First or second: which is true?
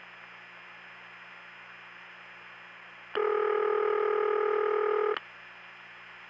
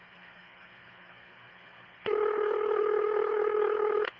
first